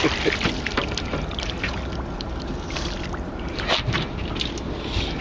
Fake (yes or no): no